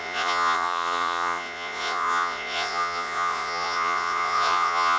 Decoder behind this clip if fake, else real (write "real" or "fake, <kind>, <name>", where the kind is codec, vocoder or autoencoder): fake, vocoder, Vocos